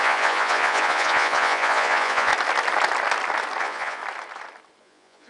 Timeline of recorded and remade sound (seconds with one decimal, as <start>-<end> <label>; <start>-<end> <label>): 0.0-2.3 remade; 2.3-3.6 recorded; 3.6-4.0 remade; 4.0-4.8 recorded; 4.8-5.3 remade